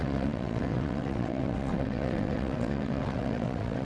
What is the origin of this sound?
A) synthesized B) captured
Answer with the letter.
A